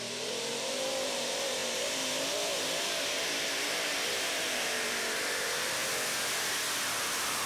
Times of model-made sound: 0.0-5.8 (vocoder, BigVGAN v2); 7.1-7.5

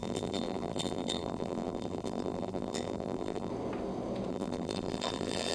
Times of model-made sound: 0.0-3.5 (vocoder, BigVGAN v2); 4.3-5.5